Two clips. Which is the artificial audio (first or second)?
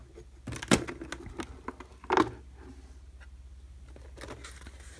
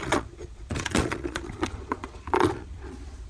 second